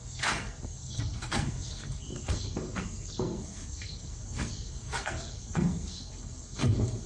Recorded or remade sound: remade